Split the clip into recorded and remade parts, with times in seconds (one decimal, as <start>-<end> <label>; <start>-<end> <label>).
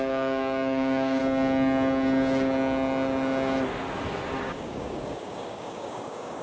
0.0-1.2 remade; 1.2-4.4 recorded; 4.4-6.4 remade